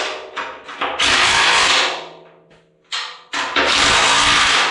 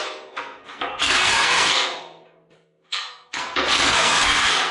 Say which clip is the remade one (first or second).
second